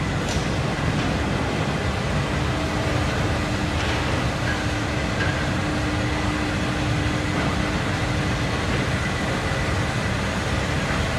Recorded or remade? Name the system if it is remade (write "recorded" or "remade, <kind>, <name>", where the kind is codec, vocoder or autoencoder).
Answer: recorded